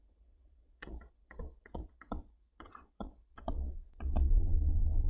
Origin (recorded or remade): remade